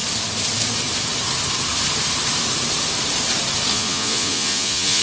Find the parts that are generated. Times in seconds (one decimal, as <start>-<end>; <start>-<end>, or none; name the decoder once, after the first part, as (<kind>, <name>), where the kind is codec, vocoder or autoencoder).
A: 3.7-5.0 (vocoder, Vocos)